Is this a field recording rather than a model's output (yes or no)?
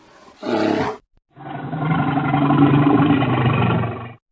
yes